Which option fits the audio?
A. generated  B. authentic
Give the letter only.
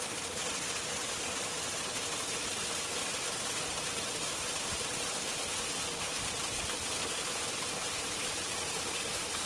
B